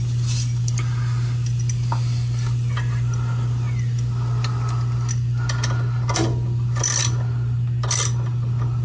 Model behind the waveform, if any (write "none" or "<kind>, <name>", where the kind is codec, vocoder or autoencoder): none